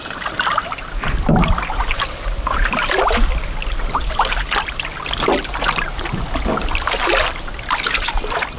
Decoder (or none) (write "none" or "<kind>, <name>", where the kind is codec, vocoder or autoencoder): none